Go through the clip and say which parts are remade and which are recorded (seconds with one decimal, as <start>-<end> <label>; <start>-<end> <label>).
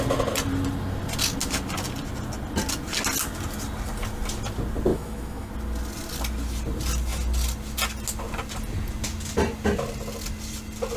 0.0-4.9 recorded; 4.9-5.5 remade; 5.5-11.0 recorded